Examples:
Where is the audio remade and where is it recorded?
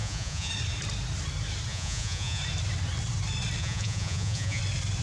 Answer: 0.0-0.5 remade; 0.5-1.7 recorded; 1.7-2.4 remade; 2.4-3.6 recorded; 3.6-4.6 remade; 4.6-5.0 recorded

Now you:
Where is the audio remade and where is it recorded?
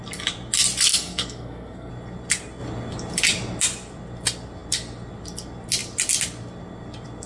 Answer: 0.0-0.9 recorded; 0.9-1.9 remade; 1.9-7.3 recorded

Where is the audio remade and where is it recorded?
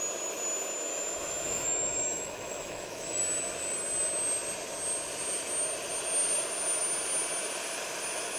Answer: 0.0-0.9 recorded; 0.9-3.2 remade; 3.2-8.4 recorded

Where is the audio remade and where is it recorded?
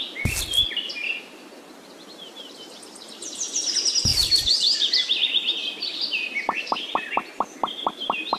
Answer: 0.0-4.1 recorded; 4.1-5.1 remade; 5.1-5.6 recorded; 5.6-7.1 remade; 7.1-8.4 recorded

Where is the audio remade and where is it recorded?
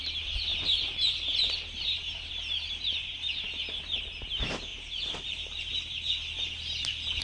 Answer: 0.0-0.5 recorded; 0.5-2.3 remade; 2.3-4.7 recorded; 4.7-5.7 remade; 5.7-7.2 recorded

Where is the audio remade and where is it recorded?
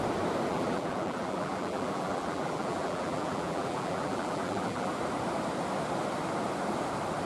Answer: 0.0-0.5 recorded; 0.5-4.9 remade; 4.9-7.3 recorded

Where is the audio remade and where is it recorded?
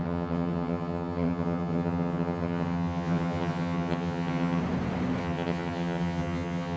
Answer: 0.0-4.6 remade; 4.6-5.2 recorded; 5.2-6.8 remade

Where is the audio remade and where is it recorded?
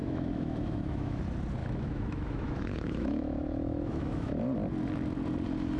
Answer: 0.0-1.2 remade; 1.2-1.6 recorded; 1.6-4.4 remade; 4.4-5.8 recorded